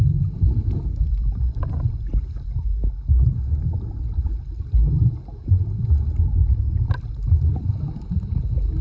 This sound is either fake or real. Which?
real